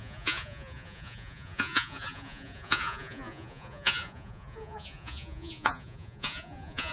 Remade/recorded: remade